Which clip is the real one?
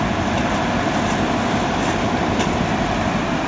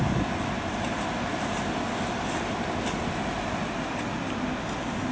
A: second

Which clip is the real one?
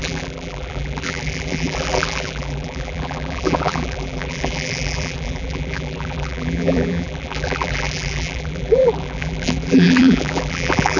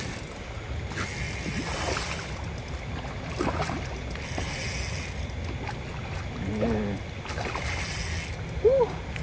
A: second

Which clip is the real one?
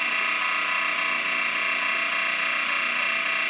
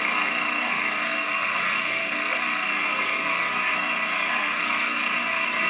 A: first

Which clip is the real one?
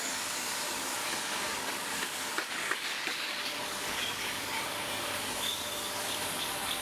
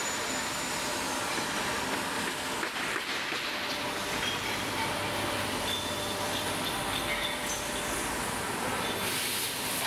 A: second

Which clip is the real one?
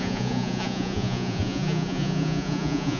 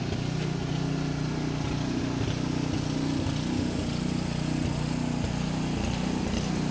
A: second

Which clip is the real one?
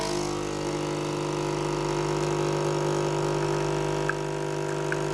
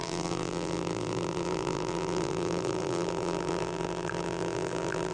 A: first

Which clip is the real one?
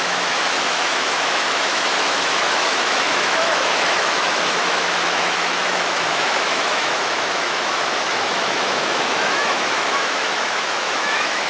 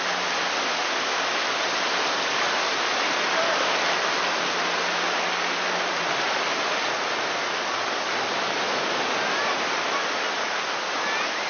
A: second